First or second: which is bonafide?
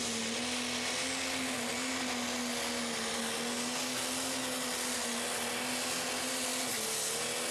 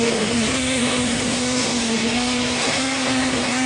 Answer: first